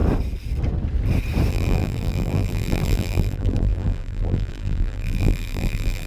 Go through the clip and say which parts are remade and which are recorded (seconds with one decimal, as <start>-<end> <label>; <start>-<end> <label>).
0.0-1.5 recorded; 1.5-6.1 remade